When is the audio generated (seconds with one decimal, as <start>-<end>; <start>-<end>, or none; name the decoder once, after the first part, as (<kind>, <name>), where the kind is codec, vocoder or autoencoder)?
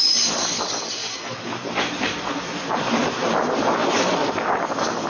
1.0-3.6 (vocoder, BigVGAN v2); 4.2-5.1